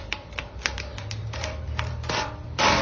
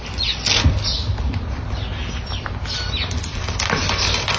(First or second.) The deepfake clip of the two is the first